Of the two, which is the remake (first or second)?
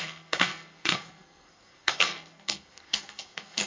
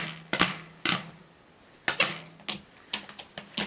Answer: first